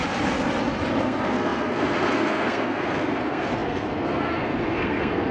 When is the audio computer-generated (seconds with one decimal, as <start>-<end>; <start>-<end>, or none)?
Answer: 1.0-5.3